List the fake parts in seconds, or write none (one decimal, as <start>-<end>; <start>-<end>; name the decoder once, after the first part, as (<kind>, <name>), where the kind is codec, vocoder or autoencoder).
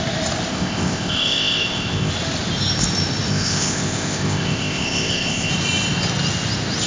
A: 0.5-2.1 (codec, ZipCodec); 3.3-5.5